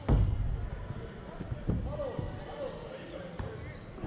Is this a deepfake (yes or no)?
no